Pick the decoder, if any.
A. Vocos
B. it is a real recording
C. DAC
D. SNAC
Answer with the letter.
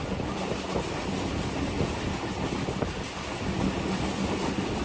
B